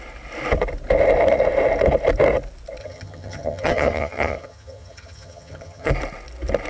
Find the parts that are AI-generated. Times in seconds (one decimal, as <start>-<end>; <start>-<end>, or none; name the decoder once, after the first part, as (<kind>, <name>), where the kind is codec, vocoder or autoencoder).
2.8-5.9 (vocoder, HiFi-GAN)